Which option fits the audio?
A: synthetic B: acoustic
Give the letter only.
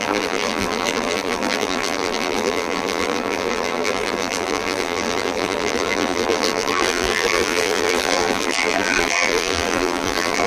A